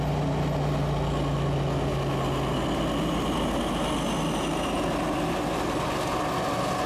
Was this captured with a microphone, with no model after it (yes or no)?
yes